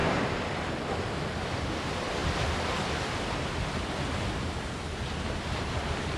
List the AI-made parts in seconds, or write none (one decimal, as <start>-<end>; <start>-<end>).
none